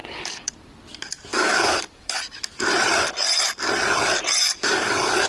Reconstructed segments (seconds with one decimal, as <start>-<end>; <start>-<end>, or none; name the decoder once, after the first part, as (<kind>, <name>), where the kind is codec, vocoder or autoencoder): 0.0-0.5 (codec, DAC); 1.3-2.2; 4.4-5.3